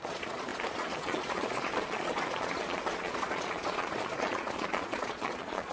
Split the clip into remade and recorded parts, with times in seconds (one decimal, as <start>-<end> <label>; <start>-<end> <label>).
0.0-5.7 remade